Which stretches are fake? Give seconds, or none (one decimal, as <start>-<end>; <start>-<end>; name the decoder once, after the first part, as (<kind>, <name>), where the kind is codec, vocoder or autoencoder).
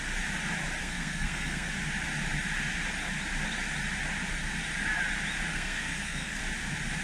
0.8-1.7 (codec, SNAC); 5.5-6.4